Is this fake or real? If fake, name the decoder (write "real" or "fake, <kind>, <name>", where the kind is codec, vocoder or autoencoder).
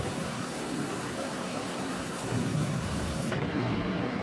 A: fake, codec, SNAC